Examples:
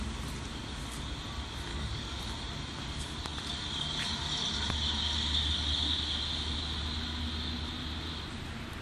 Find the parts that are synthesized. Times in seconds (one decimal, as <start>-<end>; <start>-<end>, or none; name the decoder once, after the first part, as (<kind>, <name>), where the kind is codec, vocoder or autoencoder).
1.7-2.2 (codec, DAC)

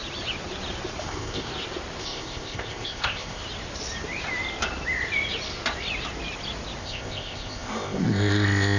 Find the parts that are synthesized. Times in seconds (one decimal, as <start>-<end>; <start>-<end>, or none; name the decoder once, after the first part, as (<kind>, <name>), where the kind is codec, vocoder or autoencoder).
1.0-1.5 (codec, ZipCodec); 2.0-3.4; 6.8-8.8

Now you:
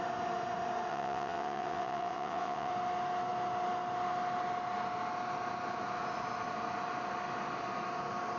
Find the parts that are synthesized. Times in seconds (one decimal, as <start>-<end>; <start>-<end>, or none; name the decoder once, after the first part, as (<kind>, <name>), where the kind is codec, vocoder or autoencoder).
0.9-2.7 (vocoder, WaveNeXt)